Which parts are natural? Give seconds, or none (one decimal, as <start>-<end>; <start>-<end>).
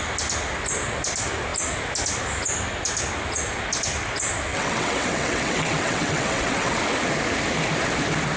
0.0-4.5; 6.8-8.4